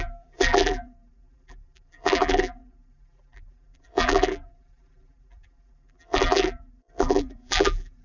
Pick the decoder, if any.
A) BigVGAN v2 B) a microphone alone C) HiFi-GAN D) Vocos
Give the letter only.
A